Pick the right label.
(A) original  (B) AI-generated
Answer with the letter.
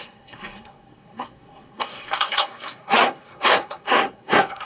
B